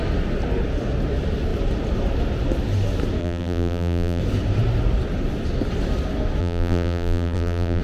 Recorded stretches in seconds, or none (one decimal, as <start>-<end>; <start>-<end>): 0.0-3.2; 4.2-6.4